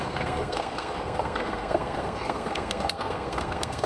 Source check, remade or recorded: remade